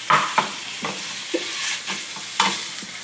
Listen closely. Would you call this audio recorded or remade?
recorded